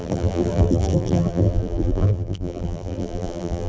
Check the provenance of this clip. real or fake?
fake